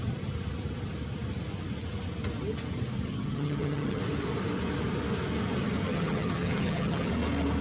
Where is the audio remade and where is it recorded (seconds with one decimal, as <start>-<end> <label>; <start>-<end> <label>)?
0.0-3.1 recorded; 3.1-4.0 remade; 4.0-5.8 recorded; 5.8-7.1 remade; 7.1-7.6 recorded